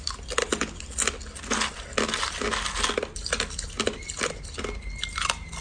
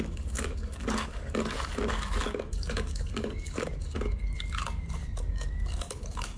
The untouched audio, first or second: first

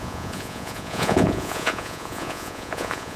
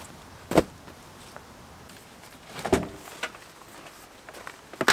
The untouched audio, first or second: second